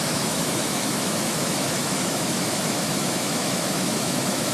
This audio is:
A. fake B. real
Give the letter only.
A